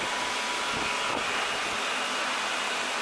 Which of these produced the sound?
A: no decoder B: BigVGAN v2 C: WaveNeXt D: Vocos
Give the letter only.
A